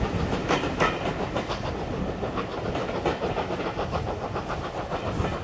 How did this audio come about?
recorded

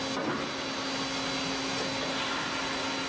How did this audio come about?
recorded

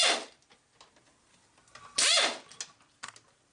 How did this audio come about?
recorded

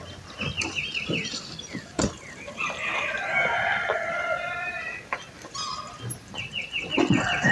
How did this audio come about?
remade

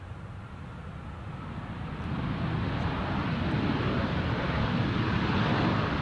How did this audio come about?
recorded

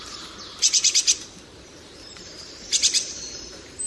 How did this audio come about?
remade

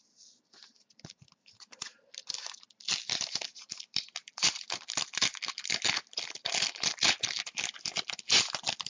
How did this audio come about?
recorded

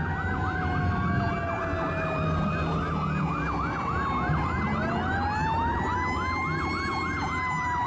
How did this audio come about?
recorded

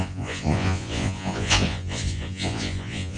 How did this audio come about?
remade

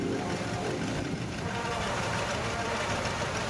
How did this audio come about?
remade